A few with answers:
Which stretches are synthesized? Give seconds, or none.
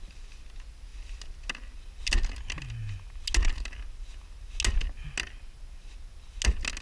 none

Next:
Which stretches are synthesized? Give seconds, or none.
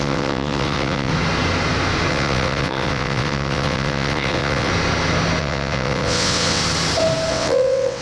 0.0-1.1 (vocoder, WaveNeXt); 2.1-4.7; 5.4-6.6; 7.3-8.0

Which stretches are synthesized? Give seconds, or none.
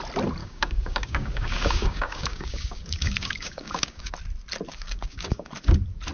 0.4-4.1 (codec, DAC); 4.7-5.5